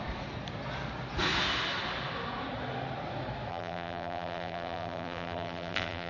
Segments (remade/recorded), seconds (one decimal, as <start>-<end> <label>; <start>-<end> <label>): 0.0-3.5 recorded; 3.5-6.1 remade